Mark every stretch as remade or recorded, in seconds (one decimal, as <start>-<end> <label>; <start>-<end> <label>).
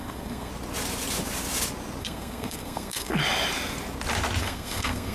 0.0-0.5 remade; 0.5-2.0 recorded; 2.0-3.2 remade; 3.2-4.4 recorded; 4.4-5.1 remade